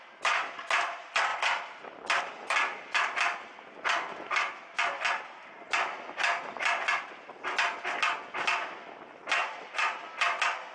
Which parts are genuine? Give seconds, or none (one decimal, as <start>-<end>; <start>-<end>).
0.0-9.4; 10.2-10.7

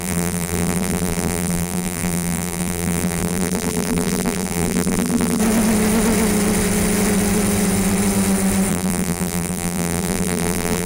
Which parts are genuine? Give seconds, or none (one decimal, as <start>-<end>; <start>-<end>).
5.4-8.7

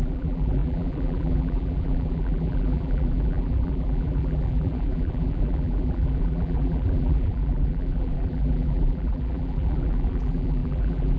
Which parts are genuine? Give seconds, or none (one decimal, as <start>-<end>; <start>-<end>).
none